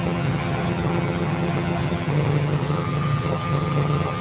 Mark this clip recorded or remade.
remade